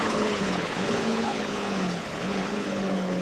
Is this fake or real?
fake